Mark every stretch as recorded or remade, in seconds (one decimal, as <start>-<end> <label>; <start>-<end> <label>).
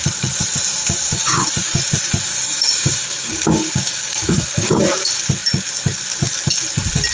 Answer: 0.0-0.8 recorded; 0.8-1.5 remade; 1.5-2.3 recorded; 2.3-4.8 remade; 4.8-7.1 recorded